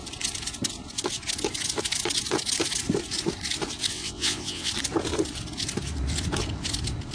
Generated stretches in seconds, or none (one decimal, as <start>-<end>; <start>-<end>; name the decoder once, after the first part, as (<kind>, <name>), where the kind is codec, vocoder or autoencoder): 3.9-4.7 (vocoder, WaveNeXt)